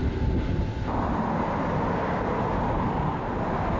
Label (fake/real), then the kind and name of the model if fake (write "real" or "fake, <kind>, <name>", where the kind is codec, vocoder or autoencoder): real